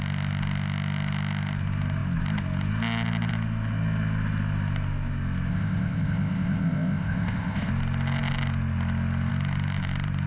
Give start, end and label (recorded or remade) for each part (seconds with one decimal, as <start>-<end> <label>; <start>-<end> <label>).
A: 0.0-5.5 recorded; 5.5-7.7 remade; 7.7-10.3 recorded